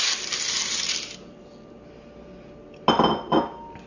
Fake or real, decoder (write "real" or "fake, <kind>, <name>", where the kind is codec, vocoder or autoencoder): real